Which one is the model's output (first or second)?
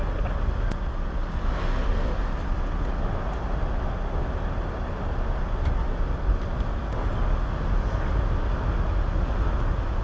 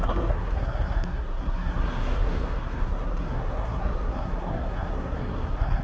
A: second